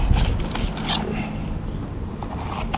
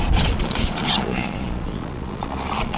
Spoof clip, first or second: second